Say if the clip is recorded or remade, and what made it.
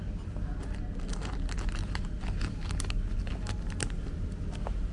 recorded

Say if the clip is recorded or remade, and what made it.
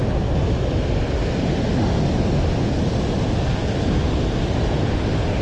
recorded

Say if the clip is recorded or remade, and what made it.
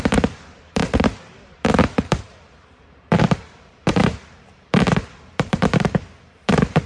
remade, vocoder, BigVGAN v2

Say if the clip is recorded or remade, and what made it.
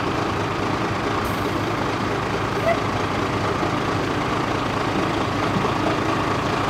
recorded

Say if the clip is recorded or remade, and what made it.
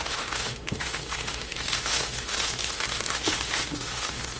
remade, autoencoder, DAC-VAE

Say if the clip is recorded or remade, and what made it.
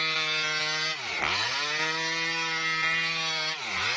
recorded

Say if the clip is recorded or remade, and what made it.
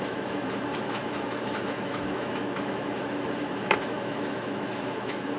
remade, autoencoder, DAC-VAE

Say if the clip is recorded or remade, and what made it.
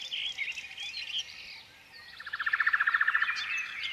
recorded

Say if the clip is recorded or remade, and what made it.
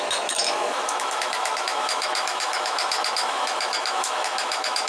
remade, autoencoder, DAC-VAE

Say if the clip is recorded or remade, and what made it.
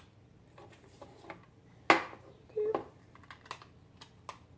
recorded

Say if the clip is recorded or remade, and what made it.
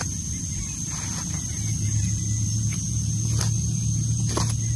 recorded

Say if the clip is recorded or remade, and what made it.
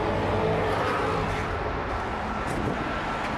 recorded